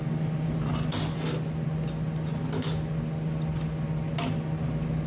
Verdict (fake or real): real